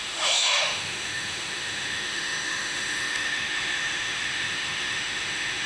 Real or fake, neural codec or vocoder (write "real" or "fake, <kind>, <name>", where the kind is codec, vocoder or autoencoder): fake, autoencoder, DAC-VAE